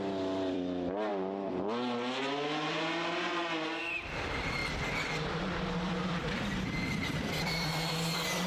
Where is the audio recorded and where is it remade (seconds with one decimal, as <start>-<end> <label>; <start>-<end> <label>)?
0.0-1.1 remade; 1.1-3.8 recorded; 3.8-8.5 remade

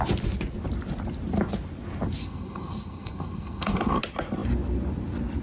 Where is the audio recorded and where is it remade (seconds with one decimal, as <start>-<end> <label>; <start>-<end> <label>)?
0.0-2.2 recorded; 2.2-4.0 remade; 4.0-5.4 recorded

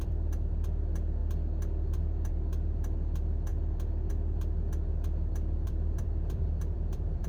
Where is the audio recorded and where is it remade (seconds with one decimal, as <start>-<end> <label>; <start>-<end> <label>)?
0.0-1.2 remade; 1.2-2.3 recorded; 2.3-3.5 remade; 3.5-4.1 recorded; 4.1-7.3 remade

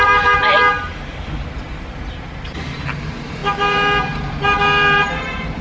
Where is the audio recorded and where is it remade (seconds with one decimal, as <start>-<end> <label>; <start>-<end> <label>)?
0.0-5.6 remade

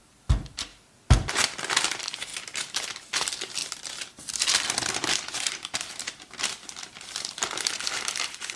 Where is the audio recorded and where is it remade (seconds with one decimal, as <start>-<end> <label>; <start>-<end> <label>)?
0.0-0.7 remade; 0.7-1.3 recorded; 1.3-2.3 remade; 2.3-2.9 recorded; 2.9-8.6 remade

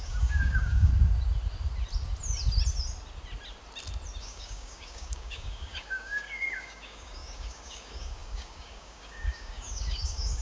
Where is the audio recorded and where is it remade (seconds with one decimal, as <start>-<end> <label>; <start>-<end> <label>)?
0.0-0.9 remade; 0.9-4.2 recorded; 4.2-10.4 remade